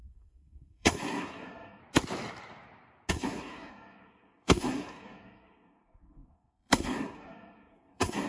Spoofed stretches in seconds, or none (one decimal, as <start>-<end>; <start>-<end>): 0.0-1.8; 3.1-8.3